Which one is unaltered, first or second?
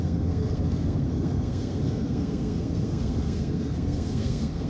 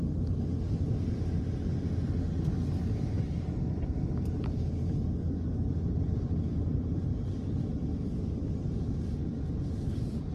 second